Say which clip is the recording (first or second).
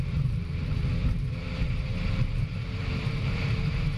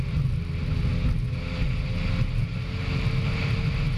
second